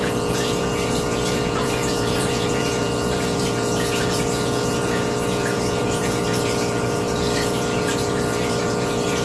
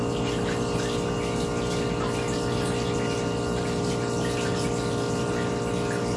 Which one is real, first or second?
second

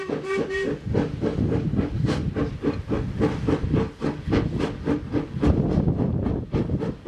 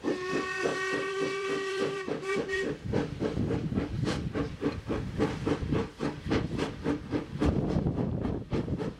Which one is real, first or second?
first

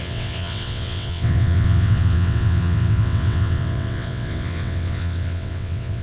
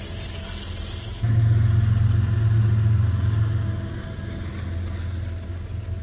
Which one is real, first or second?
second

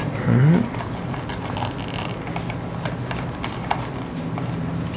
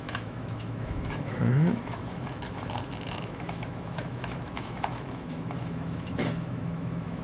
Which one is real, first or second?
first